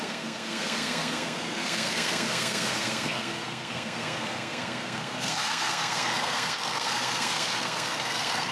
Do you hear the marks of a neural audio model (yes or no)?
yes